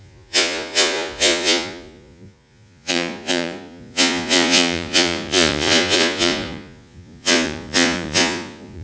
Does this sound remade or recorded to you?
remade